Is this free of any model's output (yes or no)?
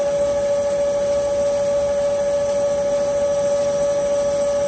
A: yes